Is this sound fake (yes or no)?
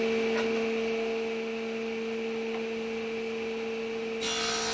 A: no